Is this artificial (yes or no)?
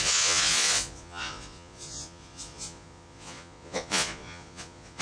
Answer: yes